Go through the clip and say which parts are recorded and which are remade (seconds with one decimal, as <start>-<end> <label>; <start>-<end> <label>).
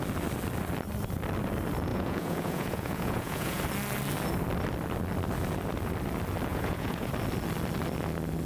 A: 0.0-1.9 recorded; 1.9-3.6 remade; 3.6-6.5 recorded; 6.5-7.1 remade; 7.1-8.4 recorded